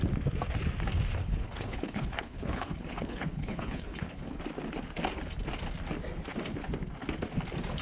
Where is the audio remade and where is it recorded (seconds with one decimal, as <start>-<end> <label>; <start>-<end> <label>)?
0.0-1.2 recorded; 1.2-4.4 remade; 4.4-7.8 recorded